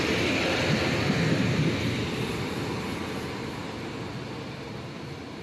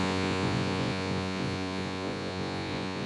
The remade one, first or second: second